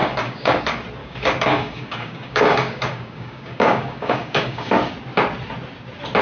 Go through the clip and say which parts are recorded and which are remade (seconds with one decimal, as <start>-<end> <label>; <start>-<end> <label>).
0.0-0.6 remade; 0.6-1.0 recorded; 1.0-4.7 remade; 4.7-6.2 recorded